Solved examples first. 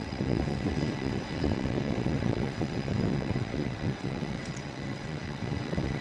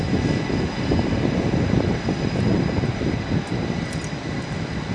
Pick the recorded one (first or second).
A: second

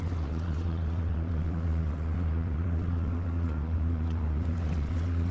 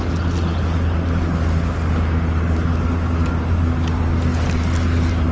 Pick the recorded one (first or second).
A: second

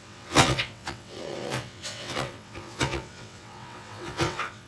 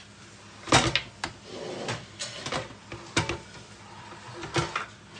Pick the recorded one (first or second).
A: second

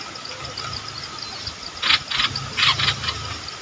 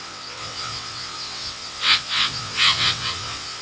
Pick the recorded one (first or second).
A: first